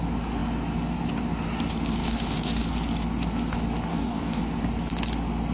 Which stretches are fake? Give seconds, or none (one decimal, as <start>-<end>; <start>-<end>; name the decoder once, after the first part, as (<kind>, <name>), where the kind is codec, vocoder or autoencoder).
2.0-2.7 (codec, DAC); 3.9-4.4